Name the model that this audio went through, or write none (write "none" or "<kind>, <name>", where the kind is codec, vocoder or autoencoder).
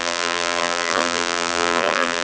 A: vocoder, BigVGAN v2